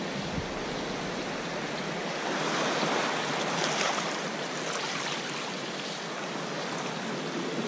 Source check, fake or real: real